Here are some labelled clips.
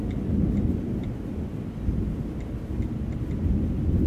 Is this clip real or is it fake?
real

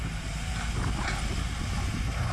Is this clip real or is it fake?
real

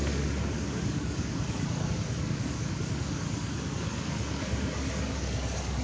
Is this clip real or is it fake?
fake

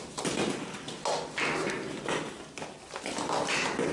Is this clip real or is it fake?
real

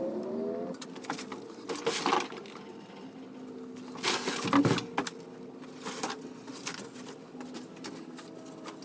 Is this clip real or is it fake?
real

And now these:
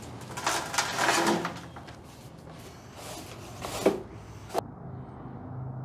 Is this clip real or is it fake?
real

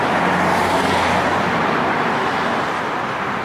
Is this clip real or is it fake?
real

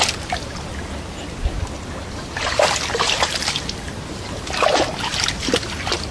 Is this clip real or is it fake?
real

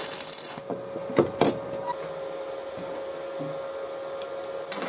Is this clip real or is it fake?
real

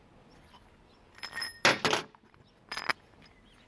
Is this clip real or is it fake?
real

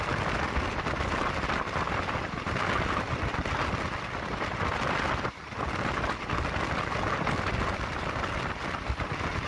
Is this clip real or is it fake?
real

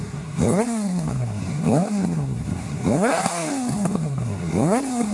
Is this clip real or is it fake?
fake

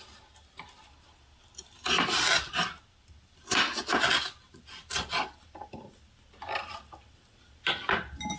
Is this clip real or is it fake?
real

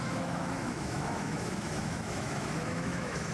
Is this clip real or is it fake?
fake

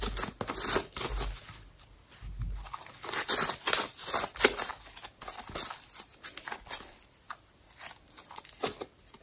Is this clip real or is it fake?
real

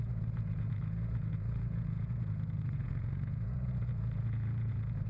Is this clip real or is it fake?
fake